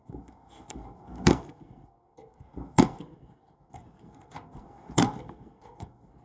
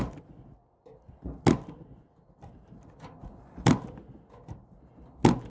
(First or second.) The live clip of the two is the second